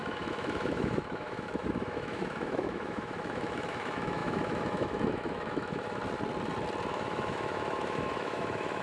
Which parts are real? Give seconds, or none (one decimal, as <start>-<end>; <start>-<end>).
6.0-6.9